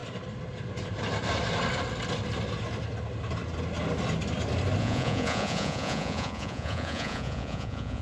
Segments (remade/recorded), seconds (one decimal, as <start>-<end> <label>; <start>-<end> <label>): 0.0-4.8 recorded; 4.8-8.0 remade